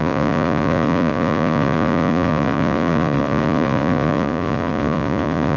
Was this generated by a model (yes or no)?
yes